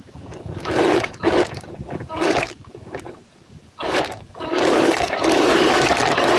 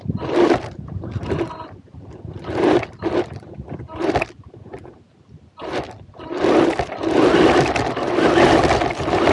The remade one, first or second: first